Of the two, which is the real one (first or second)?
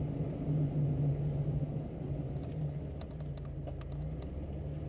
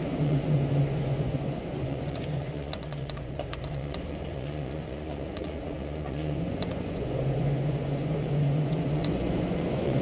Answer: first